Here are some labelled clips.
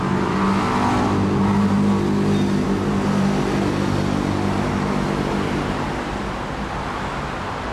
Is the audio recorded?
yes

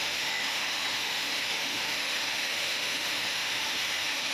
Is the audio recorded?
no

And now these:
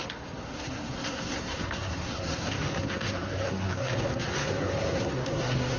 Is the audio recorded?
no